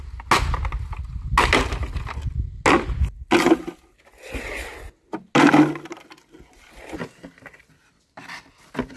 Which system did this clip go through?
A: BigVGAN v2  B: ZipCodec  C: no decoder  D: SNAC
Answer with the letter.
C